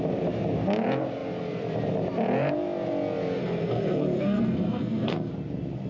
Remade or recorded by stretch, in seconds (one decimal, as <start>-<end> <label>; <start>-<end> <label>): 0.0-3.4 recorded; 3.4-5.3 remade; 5.3-5.9 recorded